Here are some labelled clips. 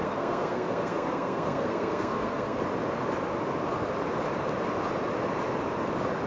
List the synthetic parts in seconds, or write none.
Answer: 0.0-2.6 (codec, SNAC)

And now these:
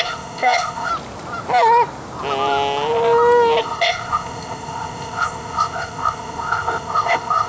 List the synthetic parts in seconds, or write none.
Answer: 0.0-0.9 (codec, ZipCodec); 3.6-7.5